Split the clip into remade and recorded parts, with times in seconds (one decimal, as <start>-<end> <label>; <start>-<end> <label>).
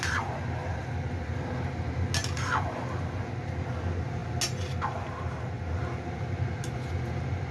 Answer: 0.0-7.5 recorded